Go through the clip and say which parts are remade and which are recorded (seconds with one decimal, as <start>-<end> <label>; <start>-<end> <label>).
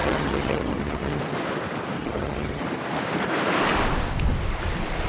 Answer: 0.0-1.2 remade; 1.2-2.0 recorded; 2.0-2.6 remade; 2.6-5.1 recorded